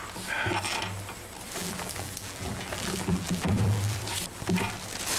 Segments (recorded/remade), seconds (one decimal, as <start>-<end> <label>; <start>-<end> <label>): 0.0-1.6 recorded; 1.6-4.0 remade; 4.0-5.2 recorded

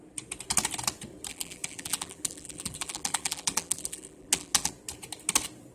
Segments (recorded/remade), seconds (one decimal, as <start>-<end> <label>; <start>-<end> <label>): 0.0-1.3 recorded; 1.3-4.7 remade; 4.7-5.7 recorded

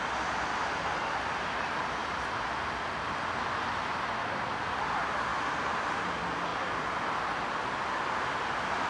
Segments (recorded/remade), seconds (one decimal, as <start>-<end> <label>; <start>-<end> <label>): 0.0-2.0 recorded; 2.0-2.9 remade; 2.9-5.3 recorded; 5.3-6.1 remade; 6.1-6.5 recorded; 6.5-7.2 remade; 7.2-8.9 recorded

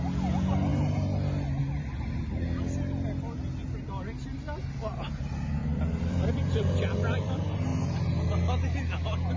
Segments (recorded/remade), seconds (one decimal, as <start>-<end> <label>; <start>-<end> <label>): 0.0-5.6 recorded; 5.6-7.3 remade; 7.3-9.4 recorded

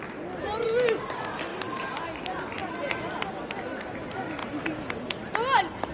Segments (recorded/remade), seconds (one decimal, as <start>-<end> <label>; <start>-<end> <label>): 0.0-1.5 recorded; 1.5-2.0 remade; 2.0-2.6 recorded; 2.6-3.4 remade; 3.4-4.4 recorded; 4.4-5.1 remade; 5.1-5.9 recorded

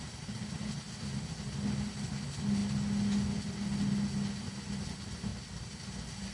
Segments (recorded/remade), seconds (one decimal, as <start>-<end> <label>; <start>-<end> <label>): 0.0-2.6 remade; 2.6-4.4 recorded; 4.4-6.3 remade

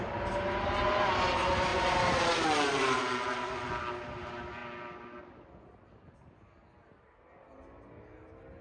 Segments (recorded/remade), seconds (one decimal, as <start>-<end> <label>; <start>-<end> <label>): 0.0-1.7 recorded; 1.7-3.0 remade; 3.0-8.6 recorded

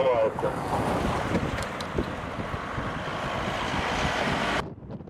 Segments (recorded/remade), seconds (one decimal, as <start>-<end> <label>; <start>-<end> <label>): 0.0-1.1 recorded; 1.1-3.1 remade; 3.1-4.0 recorded; 4.0-5.1 remade